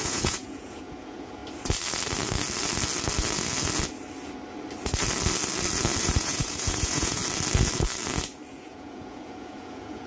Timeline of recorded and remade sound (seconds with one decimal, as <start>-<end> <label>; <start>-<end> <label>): 0.0-1.4 remade; 1.4-6.0 recorded; 6.0-7.2 remade; 7.2-8.5 recorded; 8.5-10.1 remade